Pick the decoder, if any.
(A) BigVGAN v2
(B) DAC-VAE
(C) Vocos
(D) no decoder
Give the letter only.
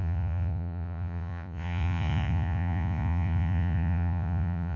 C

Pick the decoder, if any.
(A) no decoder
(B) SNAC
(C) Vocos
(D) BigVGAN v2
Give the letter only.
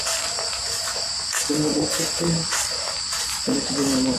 D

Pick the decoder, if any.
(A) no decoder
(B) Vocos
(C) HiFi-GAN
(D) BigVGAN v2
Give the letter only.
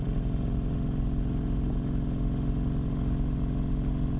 A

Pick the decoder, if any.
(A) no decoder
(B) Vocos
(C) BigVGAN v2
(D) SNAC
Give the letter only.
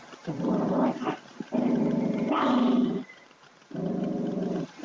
C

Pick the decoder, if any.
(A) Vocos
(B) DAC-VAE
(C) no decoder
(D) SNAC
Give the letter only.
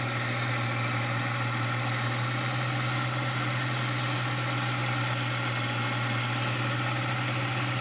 C